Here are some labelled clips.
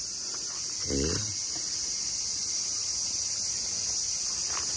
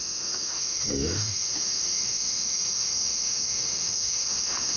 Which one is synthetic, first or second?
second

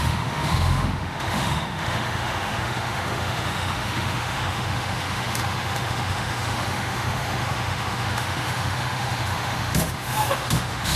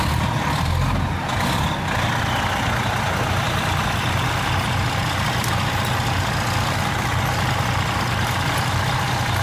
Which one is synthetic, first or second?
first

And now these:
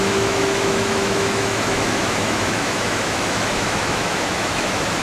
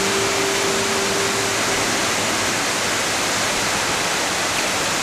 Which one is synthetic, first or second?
first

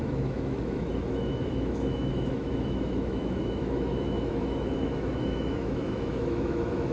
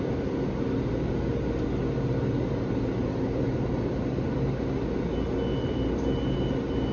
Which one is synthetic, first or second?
first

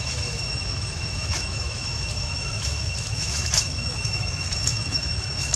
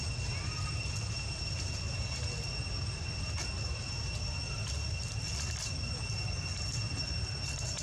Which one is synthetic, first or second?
first